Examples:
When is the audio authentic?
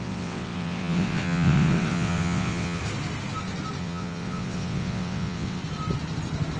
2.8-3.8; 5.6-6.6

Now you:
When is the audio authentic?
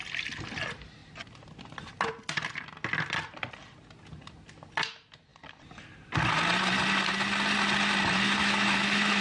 0.0-8.4